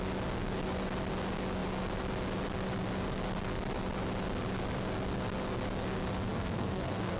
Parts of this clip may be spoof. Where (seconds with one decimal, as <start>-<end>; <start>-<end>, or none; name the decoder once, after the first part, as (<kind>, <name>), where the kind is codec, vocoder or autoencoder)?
6.3-7.2 (codec, SNAC)